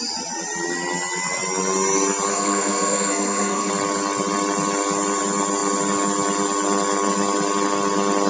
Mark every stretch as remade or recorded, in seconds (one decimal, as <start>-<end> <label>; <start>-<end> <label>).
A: 0.0-2.3 recorded; 2.3-3.7 remade; 3.7-8.3 recorded